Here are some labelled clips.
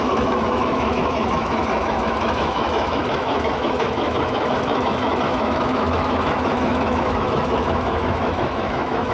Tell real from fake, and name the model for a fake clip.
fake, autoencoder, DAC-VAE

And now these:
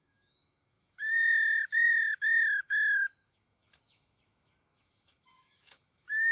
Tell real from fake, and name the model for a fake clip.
fake, autoencoder, DAC-VAE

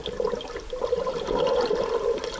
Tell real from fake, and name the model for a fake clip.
real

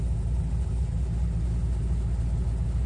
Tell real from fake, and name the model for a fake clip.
real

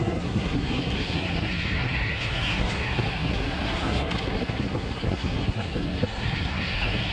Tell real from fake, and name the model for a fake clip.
fake, codec, SNAC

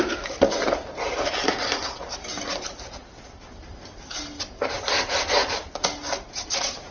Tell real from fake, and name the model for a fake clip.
real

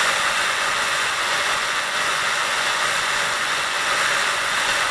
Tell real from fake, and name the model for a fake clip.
fake, vocoder, Vocos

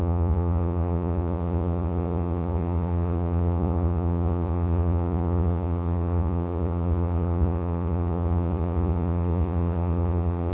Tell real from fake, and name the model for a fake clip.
fake, vocoder, Vocos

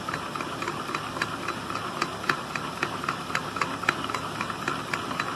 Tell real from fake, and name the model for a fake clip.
real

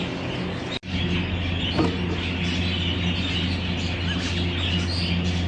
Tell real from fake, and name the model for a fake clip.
real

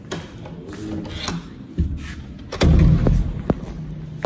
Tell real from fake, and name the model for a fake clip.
real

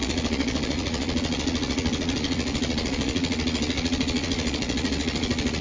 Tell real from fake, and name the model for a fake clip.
fake, vocoder, Vocos